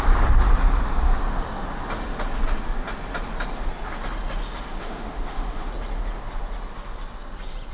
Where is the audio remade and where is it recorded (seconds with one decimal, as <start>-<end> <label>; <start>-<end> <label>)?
0.0-4.8 recorded; 4.8-5.7 remade; 5.7-7.7 recorded